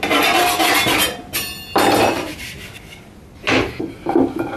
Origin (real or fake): real